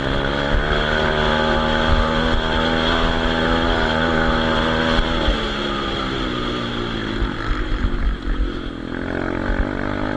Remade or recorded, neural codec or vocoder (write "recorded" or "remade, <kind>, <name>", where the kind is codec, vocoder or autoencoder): recorded